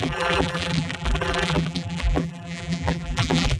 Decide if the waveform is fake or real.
fake